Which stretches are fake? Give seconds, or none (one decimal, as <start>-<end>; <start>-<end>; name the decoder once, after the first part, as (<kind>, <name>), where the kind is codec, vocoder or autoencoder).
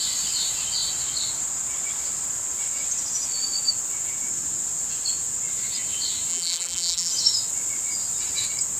6.3-7.1 (vocoder, BigVGAN v2)